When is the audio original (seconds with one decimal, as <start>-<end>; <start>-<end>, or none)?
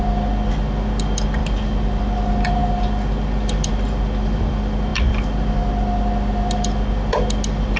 1.4-2.0